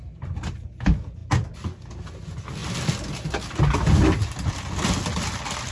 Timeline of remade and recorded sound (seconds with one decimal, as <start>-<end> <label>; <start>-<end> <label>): 0.0-5.7 recorded